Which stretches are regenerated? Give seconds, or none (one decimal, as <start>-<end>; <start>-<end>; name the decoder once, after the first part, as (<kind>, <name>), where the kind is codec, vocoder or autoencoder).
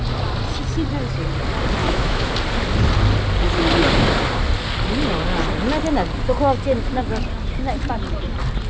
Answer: 1.8-2.3 (autoencoder, DAC-VAE)